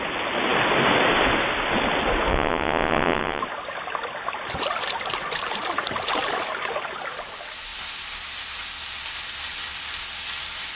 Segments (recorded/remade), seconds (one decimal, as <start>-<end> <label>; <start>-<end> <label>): 0.0-2.3 recorded; 2.3-3.4 remade; 3.4-10.8 recorded